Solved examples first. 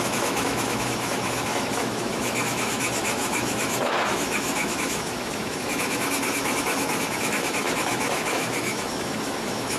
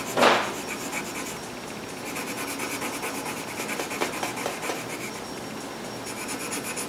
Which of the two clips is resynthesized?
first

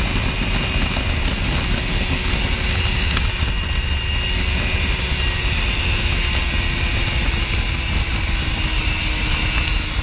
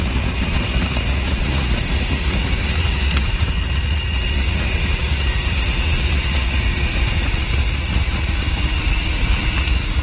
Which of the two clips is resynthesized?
second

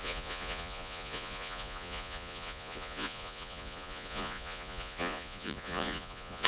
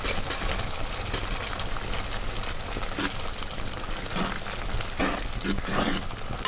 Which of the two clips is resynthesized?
first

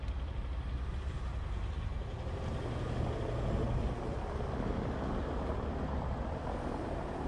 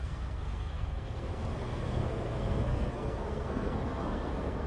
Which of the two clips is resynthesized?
second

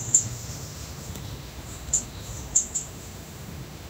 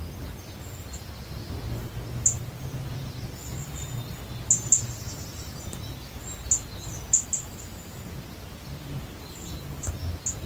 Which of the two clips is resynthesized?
first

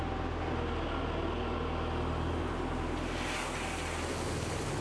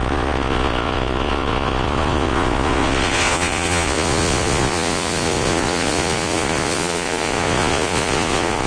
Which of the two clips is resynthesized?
second